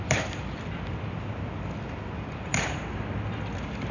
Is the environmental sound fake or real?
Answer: real